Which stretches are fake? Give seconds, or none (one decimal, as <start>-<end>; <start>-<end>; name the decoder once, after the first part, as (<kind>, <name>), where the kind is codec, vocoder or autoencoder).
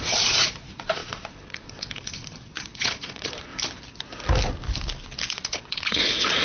0.0-3.5 (vocoder, Vocos); 5.3-6.4